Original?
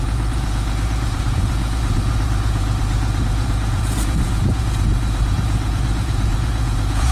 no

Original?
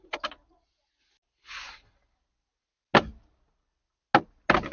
yes